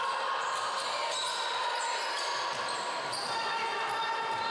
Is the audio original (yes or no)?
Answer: yes